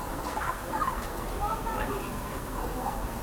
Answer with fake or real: fake